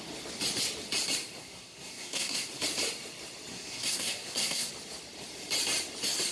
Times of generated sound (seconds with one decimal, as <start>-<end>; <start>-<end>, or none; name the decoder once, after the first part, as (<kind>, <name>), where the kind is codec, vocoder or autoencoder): 1.4-2.5 (codec, SNAC); 3.5-4.7